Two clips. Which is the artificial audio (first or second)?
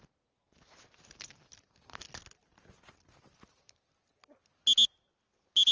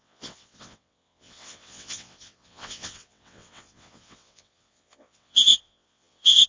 second